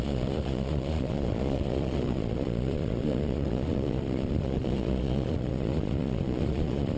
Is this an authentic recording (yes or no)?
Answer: no